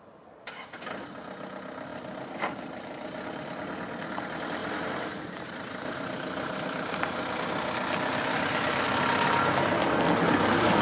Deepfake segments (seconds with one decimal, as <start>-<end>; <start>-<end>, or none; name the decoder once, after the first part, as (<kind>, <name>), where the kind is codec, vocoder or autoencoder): 1.9-3.3 (vocoder, BigVGAN v2); 4.6-7.3